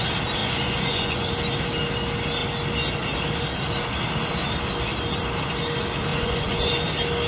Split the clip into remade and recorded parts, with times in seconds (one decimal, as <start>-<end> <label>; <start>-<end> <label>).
0.0-0.4 recorded; 0.4-1.3 remade; 1.3-6.1 recorded; 6.1-6.7 remade; 6.7-7.3 recorded